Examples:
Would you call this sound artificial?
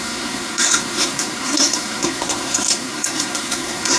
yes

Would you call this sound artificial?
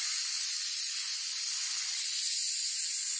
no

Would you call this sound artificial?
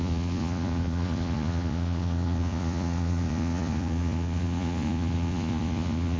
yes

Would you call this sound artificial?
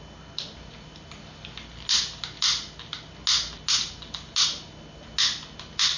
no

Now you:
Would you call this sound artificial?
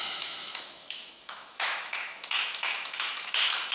yes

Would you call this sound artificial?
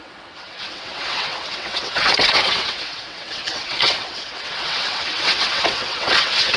yes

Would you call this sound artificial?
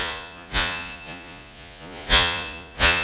yes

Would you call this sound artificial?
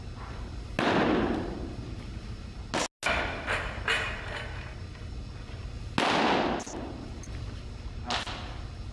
no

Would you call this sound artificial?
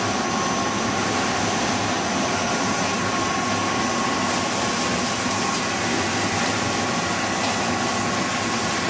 no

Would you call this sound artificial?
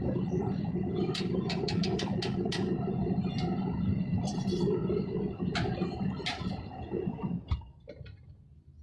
no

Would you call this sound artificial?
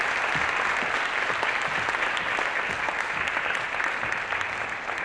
no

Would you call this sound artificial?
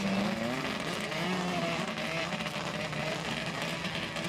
no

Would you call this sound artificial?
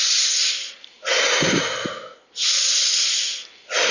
no